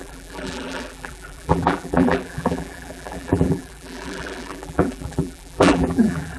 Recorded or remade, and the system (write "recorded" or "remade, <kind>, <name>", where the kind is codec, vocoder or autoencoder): remade, vocoder, BigVGAN v2